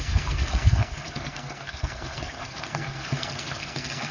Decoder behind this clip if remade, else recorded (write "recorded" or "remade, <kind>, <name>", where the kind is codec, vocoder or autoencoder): remade, codec, SNAC